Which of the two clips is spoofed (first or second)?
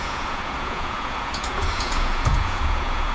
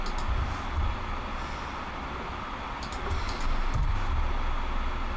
first